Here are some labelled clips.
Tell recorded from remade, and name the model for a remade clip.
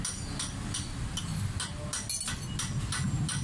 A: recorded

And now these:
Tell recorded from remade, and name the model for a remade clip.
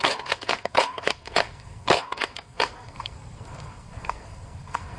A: remade, codec, SNAC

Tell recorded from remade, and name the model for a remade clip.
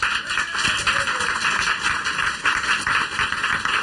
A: recorded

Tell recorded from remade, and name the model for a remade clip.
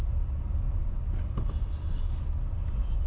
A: recorded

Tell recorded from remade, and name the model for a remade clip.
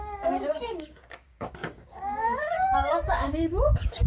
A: remade, codec, DAC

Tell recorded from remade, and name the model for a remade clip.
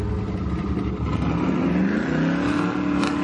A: recorded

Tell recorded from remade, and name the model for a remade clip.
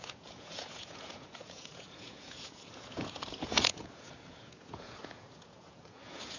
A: remade, vocoder, Vocos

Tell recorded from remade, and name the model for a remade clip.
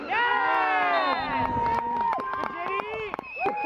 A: recorded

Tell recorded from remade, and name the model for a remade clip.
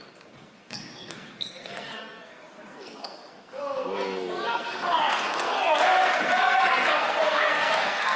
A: remade, codec, SNAC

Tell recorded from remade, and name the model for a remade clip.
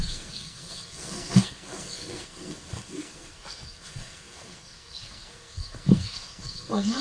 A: remade, codec, SNAC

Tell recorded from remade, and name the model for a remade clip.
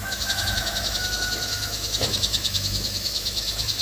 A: remade, autoencoder, DAC-VAE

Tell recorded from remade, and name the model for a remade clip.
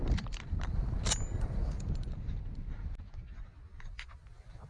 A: recorded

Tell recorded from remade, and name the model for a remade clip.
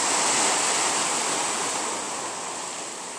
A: recorded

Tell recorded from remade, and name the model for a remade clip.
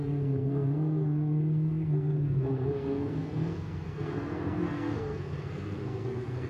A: remade, codec, SNAC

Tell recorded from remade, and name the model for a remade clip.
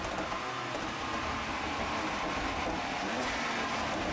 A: recorded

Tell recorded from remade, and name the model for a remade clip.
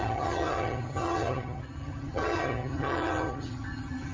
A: remade, vocoder, HiFi-GAN